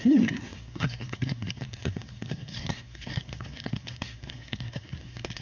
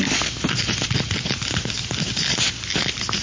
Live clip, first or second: second